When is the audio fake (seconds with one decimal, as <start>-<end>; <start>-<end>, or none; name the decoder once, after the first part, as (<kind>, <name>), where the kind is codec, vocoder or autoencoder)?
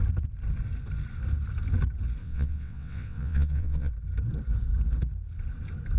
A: 2.2-3.9 (vocoder, WaveNeXt)